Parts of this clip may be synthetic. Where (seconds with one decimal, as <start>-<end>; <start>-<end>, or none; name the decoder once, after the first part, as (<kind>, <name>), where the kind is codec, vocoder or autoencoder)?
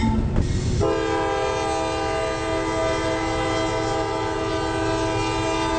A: none